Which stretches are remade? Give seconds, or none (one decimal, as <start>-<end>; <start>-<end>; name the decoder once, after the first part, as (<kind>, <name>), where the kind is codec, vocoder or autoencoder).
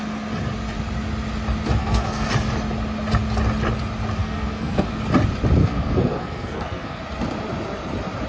1.8-2.3 (codec, SNAC); 4.2-4.9; 5.6-7.0